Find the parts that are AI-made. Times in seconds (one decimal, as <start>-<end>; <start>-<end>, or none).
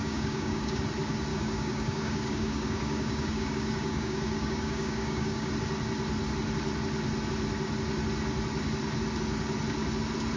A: 0.0-0.8; 1.3-5.5